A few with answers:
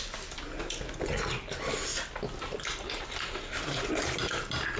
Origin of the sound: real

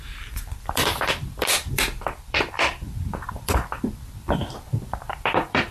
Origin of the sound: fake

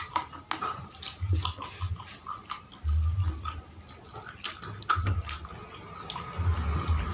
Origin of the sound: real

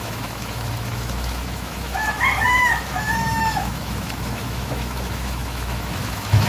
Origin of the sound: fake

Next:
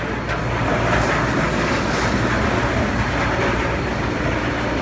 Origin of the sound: real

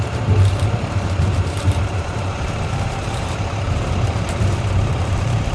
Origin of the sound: fake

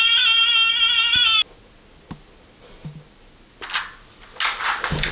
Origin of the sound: real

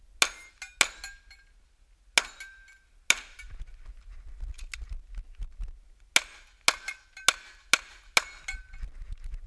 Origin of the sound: real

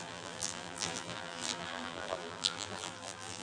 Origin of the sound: fake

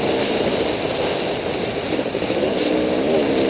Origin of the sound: real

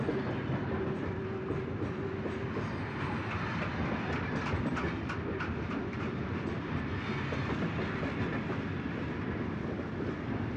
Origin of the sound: real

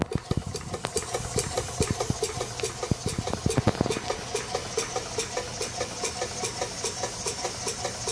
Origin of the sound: real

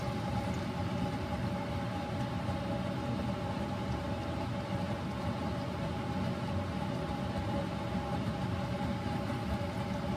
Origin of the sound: real